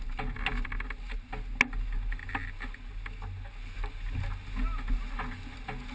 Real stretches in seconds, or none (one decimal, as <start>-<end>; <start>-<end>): 0.0-5.9